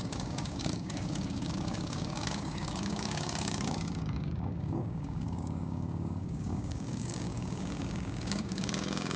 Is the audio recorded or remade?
remade